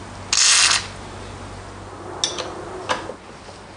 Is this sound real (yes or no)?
yes